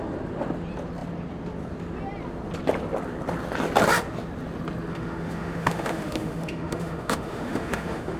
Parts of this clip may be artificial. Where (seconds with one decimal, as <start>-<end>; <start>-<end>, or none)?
4.9-8.2